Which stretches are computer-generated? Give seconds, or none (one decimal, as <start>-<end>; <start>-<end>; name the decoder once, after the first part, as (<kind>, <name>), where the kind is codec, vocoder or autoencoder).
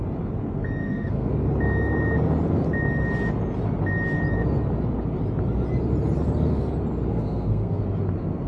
0.8-1.3 (codec, SNAC); 7.1-7.8